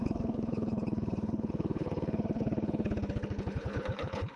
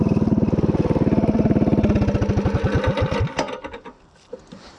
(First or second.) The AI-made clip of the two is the first